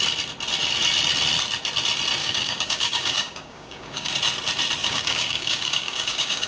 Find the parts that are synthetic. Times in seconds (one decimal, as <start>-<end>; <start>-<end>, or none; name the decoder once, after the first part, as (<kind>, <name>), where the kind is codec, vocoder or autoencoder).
2.2-4.1 (codec, DAC); 4.8-6.5